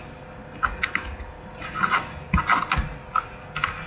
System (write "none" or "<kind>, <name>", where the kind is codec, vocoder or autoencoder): none